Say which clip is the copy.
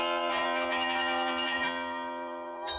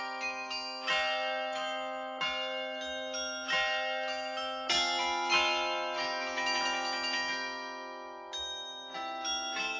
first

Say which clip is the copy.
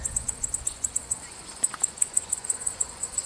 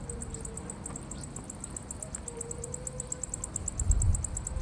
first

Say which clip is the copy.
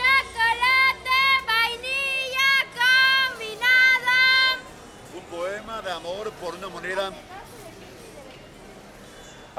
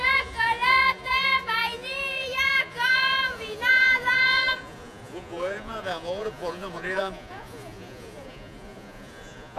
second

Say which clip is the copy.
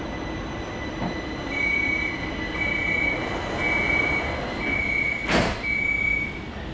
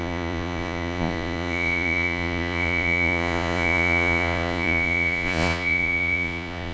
second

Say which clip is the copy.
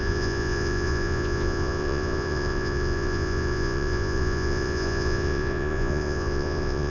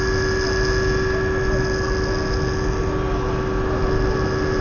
first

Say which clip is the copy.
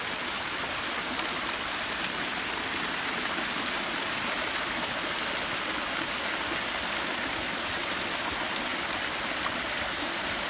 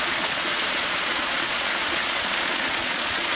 second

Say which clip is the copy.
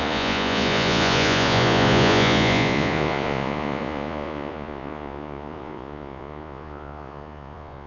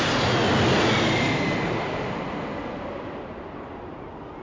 first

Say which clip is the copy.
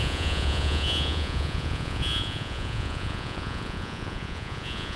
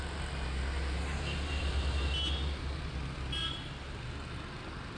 first